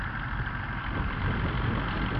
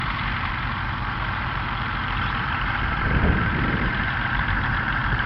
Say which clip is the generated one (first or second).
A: second